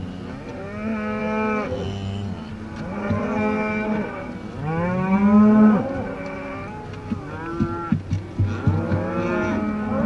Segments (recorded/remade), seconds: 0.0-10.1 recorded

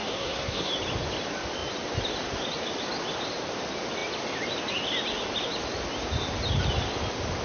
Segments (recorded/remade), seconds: 0.0-0.7 remade; 0.7-7.4 recorded

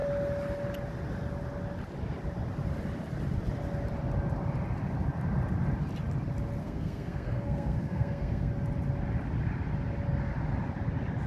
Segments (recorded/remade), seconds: 0.0-6.6 recorded; 6.6-8.5 remade; 8.5-11.3 recorded

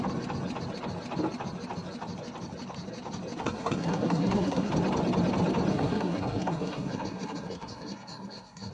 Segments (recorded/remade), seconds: 0.0-3.4 recorded; 3.4-4.7 remade; 4.7-5.7 recorded; 5.7-8.7 remade

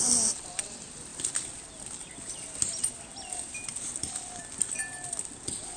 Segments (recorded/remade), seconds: 0.0-5.8 recorded

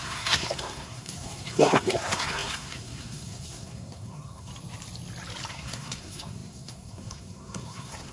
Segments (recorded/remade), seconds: 0.0-4.5 remade; 4.5-5.5 recorded; 5.5-8.1 remade

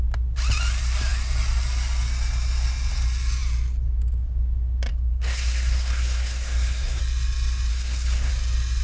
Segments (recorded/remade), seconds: 0.0-4.9 recorded; 4.9-7.0 remade; 7.0-7.7 recorded; 7.7-8.3 remade; 8.3-8.8 recorded

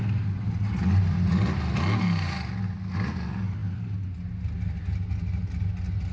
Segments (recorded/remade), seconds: 0.0-6.1 recorded